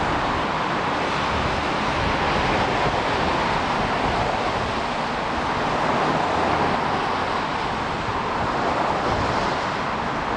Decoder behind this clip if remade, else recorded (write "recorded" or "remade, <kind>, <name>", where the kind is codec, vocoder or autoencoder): recorded